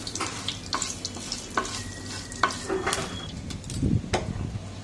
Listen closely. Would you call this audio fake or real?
real